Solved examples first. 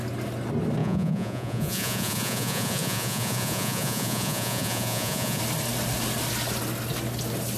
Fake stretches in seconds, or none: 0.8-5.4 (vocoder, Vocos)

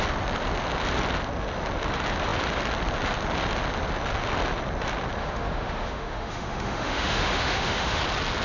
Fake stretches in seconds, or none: 5.2-8.0 (autoencoder, DAC-VAE)

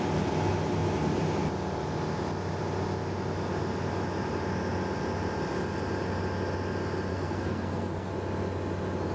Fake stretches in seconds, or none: 7.1-8.1 (codec, SNAC)